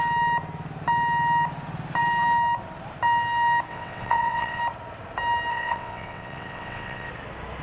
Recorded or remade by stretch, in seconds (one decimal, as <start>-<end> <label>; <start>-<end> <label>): 0.0-3.7 recorded; 3.7-4.6 remade; 4.6-5.5 recorded; 5.5-7.1 remade; 7.1-7.6 recorded